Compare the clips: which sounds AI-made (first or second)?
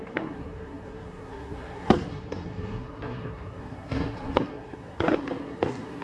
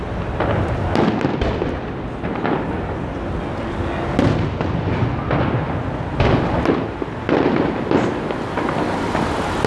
first